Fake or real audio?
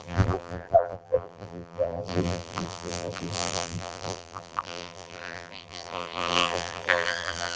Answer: fake